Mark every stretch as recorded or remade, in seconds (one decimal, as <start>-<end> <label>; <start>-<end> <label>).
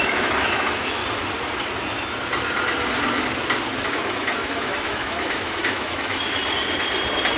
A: 0.0-1.0 remade; 1.0-3.9 recorded; 3.9-6.4 remade; 6.4-7.4 recorded